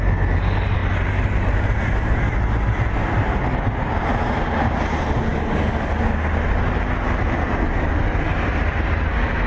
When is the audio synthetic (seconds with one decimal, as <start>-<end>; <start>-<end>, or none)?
none